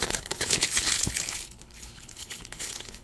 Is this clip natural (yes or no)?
no